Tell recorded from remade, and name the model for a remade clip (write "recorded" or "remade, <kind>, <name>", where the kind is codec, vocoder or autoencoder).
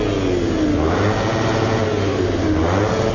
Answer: recorded